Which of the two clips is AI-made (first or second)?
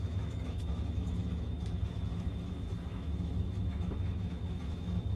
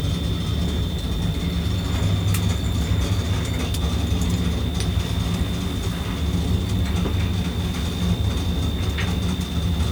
first